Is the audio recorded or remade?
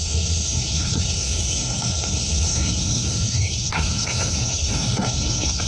remade